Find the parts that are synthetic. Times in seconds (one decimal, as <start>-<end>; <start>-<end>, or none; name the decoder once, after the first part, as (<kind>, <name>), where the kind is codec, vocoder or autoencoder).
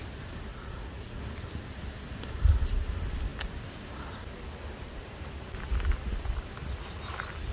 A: 0.5-1.2 (vocoder, Vocos)